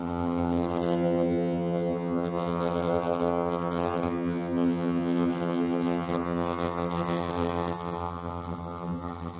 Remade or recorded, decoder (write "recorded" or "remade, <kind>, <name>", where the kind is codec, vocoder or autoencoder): remade, vocoder, HiFi-GAN